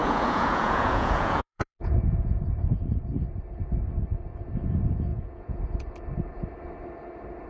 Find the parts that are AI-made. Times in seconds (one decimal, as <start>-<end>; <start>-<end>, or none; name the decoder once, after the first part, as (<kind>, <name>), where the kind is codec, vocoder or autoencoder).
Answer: 0.0-2.4 (vocoder, Vocos); 5.1-5.6